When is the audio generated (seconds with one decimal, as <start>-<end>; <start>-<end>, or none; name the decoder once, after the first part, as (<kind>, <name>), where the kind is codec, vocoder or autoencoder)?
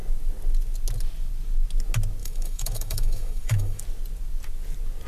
2.2-3.8 (autoencoder, DAC-VAE)